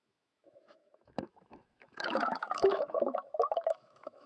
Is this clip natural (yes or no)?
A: no